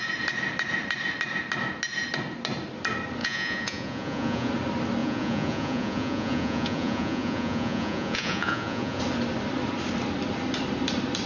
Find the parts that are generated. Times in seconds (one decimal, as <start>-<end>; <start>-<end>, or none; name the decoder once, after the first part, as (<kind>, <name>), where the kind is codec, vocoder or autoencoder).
3.2-4.5 (vocoder, Vocos); 5.0-9.0